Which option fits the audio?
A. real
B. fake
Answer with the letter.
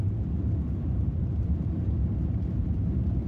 B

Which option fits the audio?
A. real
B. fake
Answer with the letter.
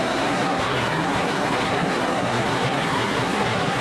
B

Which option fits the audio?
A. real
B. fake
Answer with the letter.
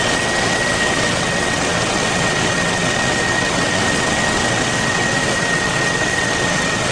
B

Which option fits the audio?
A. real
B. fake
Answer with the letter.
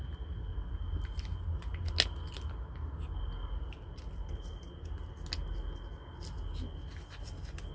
A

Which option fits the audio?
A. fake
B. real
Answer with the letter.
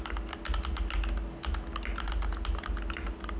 B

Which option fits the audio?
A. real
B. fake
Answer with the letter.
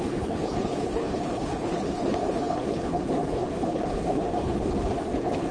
B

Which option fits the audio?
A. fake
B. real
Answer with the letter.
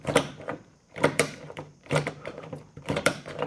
A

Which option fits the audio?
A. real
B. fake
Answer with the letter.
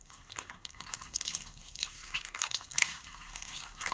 B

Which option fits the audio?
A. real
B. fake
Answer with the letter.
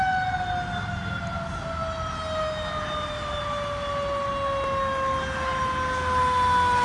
A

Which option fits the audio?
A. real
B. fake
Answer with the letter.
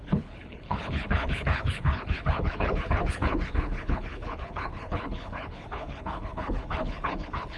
B